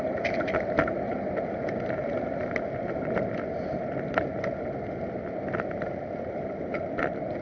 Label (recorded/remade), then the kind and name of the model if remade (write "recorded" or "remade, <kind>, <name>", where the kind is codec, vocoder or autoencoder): recorded